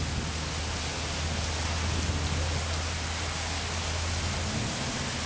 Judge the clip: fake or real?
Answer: real